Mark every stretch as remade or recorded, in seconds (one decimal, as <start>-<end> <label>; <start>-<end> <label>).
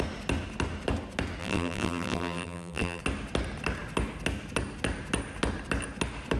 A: 0.0-1.4 recorded; 1.4-3.0 remade; 3.0-6.4 recorded